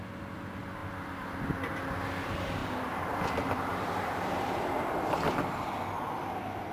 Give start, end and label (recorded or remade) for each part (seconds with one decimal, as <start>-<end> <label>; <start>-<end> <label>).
0.0-2.6 recorded; 2.6-5.4 remade; 5.4-6.7 recorded